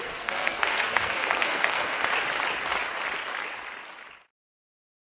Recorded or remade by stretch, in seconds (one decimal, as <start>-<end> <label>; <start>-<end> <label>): 0.0-2.0 remade; 2.0-4.5 recorded; 4.5-5.0 remade